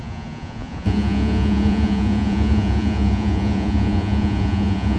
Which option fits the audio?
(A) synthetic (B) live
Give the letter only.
A